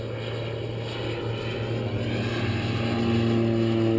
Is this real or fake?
real